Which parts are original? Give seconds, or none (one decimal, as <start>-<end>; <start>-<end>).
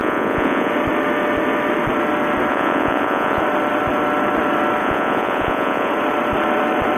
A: 0.7-2.5; 3.4-4.8; 5.9-7.0